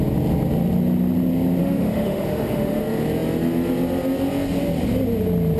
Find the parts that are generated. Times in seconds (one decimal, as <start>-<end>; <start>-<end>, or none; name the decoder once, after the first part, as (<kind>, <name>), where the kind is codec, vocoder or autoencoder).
1.6-2.8 (autoencoder, DAC-VAE)